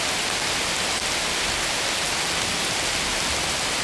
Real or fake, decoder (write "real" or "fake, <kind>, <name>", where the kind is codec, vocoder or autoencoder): real